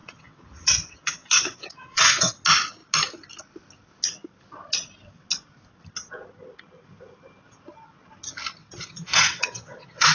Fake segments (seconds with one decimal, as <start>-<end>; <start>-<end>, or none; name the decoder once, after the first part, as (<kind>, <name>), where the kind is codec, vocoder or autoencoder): 0.0-2.3 (vocoder, WaveNeXt); 8.6-10.1